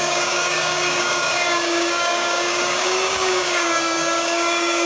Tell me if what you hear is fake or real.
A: fake